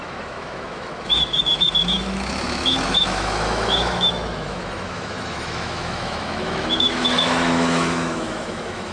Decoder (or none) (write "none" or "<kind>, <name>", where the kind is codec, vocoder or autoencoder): autoencoder, DAC-VAE